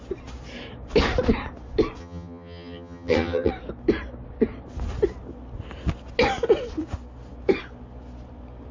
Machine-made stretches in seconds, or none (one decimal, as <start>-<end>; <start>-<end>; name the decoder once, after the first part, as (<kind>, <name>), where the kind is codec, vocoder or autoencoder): 2.0-3.5 (vocoder, HiFi-GAN)